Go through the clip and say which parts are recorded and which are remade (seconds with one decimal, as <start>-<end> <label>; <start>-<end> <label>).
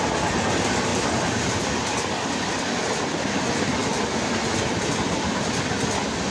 0.0-6.3 recorded